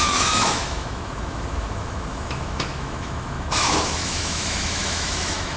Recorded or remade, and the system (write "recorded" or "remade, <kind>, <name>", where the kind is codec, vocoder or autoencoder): remade, autoencoder, DAC-VAE